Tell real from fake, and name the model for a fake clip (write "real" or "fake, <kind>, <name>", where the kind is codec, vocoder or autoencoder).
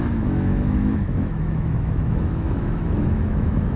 fake, autoencoder, DAC-VAE